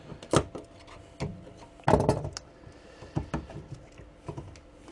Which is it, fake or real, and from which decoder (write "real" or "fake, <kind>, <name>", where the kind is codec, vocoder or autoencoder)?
real